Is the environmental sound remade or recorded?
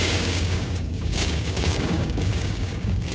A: remade